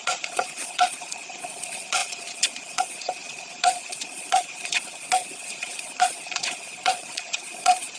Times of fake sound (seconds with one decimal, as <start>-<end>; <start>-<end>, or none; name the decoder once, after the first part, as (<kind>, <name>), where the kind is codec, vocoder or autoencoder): 0.0-8.0 (vocoder, Vocos)